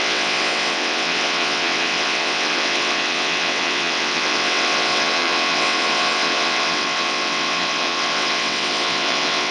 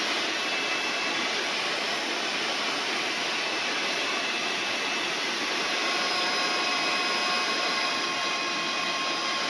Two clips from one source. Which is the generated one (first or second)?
first